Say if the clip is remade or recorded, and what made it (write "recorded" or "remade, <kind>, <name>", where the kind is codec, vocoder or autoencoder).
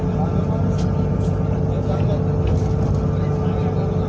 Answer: recorded